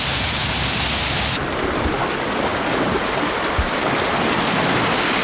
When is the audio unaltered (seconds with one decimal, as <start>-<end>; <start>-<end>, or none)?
0.0-5.2